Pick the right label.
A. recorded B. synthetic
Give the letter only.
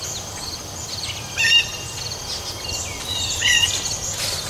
A